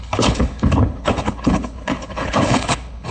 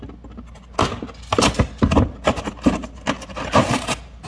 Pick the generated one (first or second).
first